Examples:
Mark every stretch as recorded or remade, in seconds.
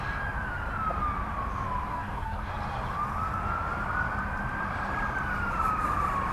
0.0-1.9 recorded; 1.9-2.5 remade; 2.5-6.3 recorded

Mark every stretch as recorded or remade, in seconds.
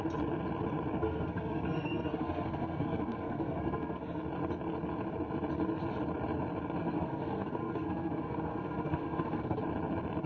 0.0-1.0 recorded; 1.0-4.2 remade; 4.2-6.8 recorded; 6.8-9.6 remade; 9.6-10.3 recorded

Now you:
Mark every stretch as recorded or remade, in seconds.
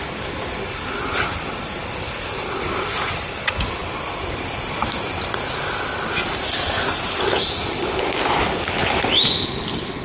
0.0-10.0 recorded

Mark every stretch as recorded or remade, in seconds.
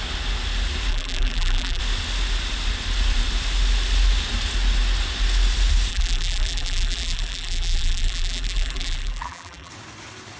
0.0-0.9 recorded; 0.9-1.8 remade; 1.8-5.9 recorded; 5.9-9.7 remade; 9.7-10.4 recorded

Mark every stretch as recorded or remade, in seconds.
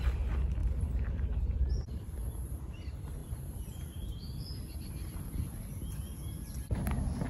0.0-0.6 recorded; 0.6-2.6 remade; 2.6-3.2 recorded; 3.2-5.6 remade; 5.6-7.3 recorded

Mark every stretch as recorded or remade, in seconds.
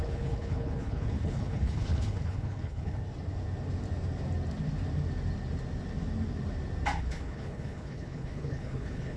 0.0-3.0 remade; 3.0-7.0 recorded; 7.0-9.2 remade